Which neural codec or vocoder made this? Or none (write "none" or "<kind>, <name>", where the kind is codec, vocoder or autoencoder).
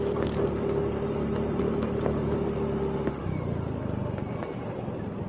none